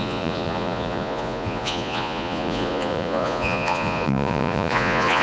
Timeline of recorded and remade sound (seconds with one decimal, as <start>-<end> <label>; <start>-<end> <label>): 0.0-5.2 remade